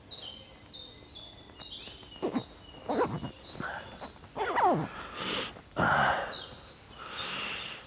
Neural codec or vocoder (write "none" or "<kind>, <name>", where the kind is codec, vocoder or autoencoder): none